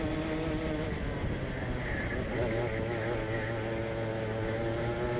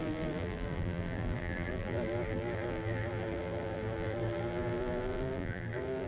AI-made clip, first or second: second